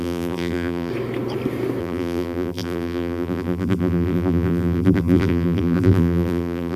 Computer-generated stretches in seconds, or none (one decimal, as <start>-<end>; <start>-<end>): 0.0-0.9; 1.8-6.8